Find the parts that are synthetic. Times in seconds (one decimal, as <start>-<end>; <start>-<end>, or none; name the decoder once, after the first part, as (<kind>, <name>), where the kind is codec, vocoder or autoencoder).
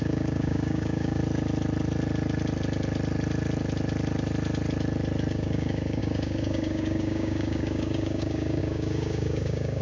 0.0-1.2 (codec, DAC); 5.3-9.8